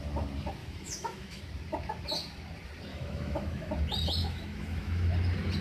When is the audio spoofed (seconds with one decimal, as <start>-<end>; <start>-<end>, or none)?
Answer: 0.6-1.4; 2.9-3.7; 4.2-5.1

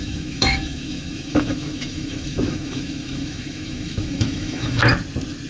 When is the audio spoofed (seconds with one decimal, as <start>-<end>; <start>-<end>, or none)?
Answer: 0.0-4.8

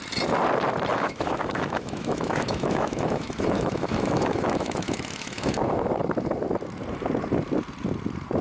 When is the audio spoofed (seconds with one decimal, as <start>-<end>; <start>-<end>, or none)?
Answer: 0.9-5.6

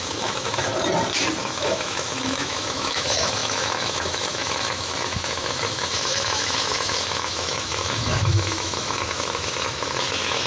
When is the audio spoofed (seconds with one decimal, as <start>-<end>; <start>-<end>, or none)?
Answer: 0.0-0.7; 1.4-10.5

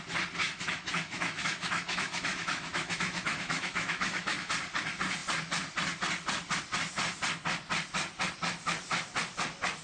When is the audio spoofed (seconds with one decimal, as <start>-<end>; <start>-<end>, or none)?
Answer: 0.4-4.5

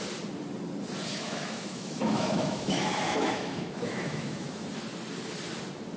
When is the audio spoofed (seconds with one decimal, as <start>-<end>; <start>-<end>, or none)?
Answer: 1.1-4.7